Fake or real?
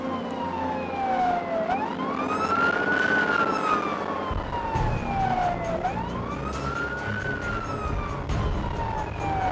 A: real